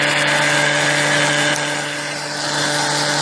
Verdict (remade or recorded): recorded